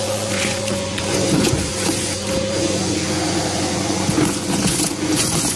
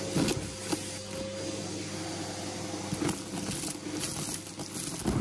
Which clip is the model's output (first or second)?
first